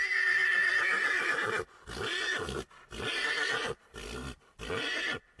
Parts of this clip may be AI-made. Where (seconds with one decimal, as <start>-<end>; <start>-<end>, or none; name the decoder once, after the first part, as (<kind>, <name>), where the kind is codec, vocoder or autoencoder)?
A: none